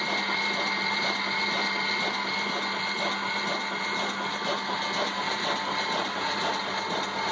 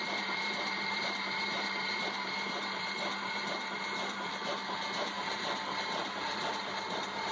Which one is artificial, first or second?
second